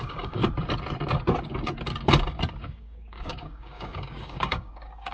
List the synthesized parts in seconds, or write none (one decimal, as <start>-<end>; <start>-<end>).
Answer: 0.0-0.4; 2.6-5.1